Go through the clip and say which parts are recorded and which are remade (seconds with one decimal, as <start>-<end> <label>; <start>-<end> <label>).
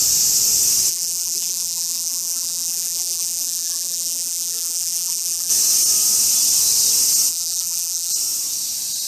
0.0-0.9 recorded; 0.9-5.5 remade; 5.5-7.3 recorded; 7.3-8.1 remade; 8.1-9.1 recorded